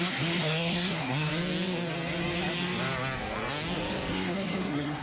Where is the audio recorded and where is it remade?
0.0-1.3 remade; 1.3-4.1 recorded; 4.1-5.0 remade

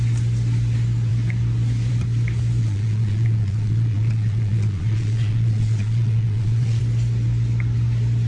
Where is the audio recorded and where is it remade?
0.0-2.6 recorded; 2.6-6.8 remade; 6.8-8.3 recorded